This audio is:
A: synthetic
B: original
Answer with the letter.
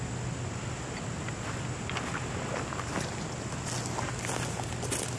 B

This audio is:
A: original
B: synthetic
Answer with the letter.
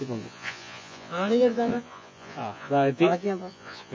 B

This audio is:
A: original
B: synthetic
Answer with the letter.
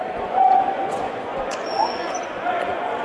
B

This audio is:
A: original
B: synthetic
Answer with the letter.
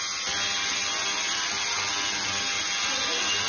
A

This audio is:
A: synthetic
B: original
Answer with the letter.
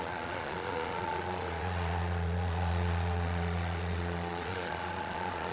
A